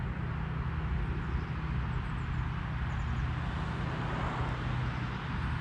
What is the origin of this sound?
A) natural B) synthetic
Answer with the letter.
A